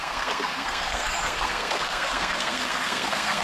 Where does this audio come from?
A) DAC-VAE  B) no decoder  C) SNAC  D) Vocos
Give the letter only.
C